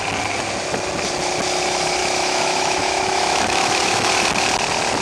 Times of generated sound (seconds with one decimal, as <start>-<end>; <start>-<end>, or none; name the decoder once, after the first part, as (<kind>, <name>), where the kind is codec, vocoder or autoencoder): 2.0-4.1 (autoencoder, DAC-VAE)